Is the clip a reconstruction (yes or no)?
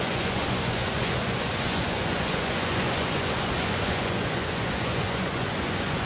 yes